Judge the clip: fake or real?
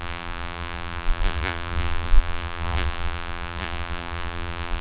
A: fake